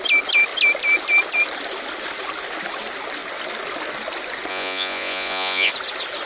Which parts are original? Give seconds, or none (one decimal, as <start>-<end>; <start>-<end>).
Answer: 0.0-4.5; 5.7-6.3

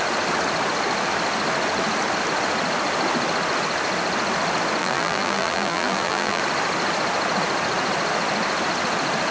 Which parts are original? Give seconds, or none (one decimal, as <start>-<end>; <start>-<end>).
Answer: 0.0-4.8; 6.4-9.3